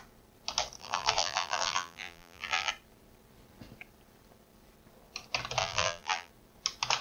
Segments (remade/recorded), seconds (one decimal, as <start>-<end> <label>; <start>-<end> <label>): 0.0-0.8 recorded; 0.8-2.7 remade; 2.7-5.6 recorded; 5.6-6.3 remade; 6.3-7.0 recorded

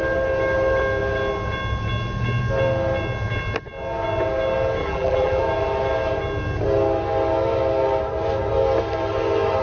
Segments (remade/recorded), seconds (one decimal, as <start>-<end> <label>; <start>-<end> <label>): 0.0-4.8 recorded; 4.8-5.4 remade; 5.4-9.6 recorded

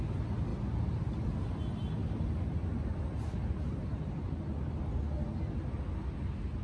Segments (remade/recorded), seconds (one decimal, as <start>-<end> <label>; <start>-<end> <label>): 0.0-2.0 recorded; 2.0-4.7 remade; 4.7-6.6 recorded

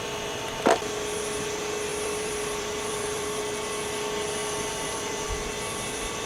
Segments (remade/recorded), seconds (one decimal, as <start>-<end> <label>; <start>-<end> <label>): 0.0-1.9 recorded; 1.9-3.4 remade; 3.4-4.4 recorded; 4.4-5.3 remade; 5.3-6.3 recorded

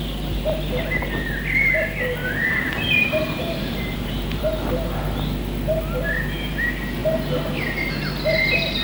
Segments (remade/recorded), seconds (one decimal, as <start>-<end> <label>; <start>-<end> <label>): 0.0-2.2 recorded; 2.2-4.4 remade; 4.4-8.8 recorded

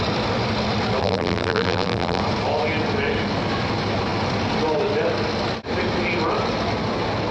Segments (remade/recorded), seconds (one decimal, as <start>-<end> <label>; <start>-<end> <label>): 0.0-1.0 recorded; 1.0-2.2 remade; 2.2-7.3 recorded